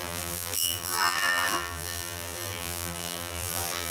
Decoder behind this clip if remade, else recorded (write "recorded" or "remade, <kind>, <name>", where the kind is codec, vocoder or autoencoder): remade, vocoder, BigVGAN v2